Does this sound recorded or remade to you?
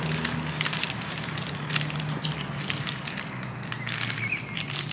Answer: recorded